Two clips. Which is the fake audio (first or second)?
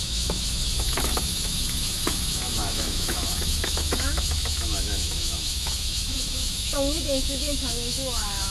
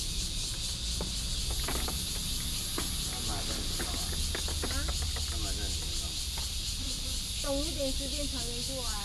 first